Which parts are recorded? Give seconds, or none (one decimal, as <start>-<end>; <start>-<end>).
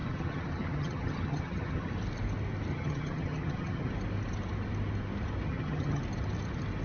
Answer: 1.9-2.7; 3.9-5.5; 6.0-6.8